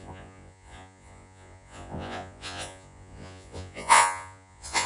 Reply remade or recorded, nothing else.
remade